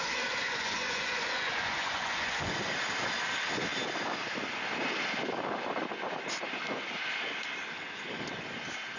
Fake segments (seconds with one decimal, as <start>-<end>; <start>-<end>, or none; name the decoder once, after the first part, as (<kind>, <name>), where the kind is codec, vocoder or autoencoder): 0.0-2.5 (vocoder, Vocos)